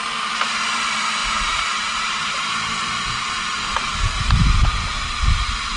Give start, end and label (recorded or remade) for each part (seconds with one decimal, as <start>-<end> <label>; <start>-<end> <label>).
0.0-1.2 recorded; 1.2-2.5 remade; 2.5-5.8 recorded